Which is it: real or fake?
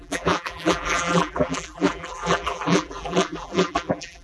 fake